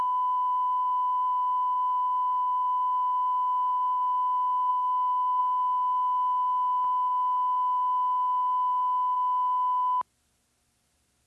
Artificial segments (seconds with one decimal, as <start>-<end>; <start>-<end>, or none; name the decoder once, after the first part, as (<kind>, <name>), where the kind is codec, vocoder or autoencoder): 4.7-5.4 (autoencoder, DAC-VAE)